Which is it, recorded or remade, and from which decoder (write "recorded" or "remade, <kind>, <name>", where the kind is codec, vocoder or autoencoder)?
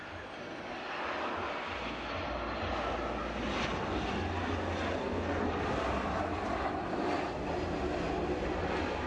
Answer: recorded